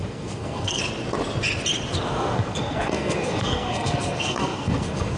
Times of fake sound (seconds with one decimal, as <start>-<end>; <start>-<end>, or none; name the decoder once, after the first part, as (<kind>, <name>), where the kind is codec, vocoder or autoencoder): 0.0-0.8 (codec, SNAC); 2.1-5.2